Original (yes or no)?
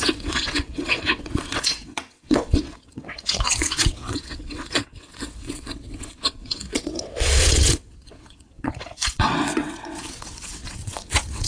no